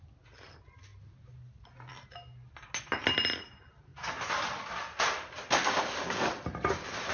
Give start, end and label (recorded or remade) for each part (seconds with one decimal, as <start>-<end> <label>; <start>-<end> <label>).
0.0-7.1 recorded